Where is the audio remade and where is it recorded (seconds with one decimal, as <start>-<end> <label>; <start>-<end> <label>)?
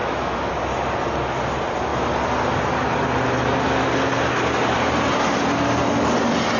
0.0-0.5 remade; 0.5-6.6 recorded